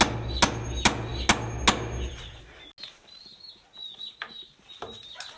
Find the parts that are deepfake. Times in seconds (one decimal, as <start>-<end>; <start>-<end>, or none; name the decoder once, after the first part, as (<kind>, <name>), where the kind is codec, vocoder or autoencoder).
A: 3.3-4.0 (vocoder, Vocos)